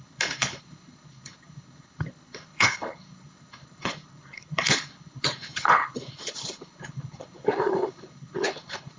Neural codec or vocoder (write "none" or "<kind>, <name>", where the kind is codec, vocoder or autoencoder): codec, HILCodec